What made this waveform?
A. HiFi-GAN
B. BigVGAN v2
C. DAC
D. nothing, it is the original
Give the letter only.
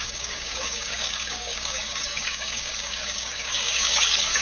C